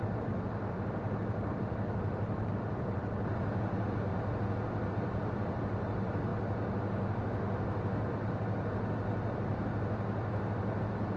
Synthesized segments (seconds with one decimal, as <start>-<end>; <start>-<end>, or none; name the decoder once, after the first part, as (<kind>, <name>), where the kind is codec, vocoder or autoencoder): 0.0-4.1 (vocoder, BigVGAN v2); 4.9-6.3; 8.1-9.6